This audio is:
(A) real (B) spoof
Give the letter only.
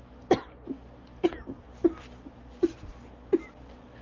A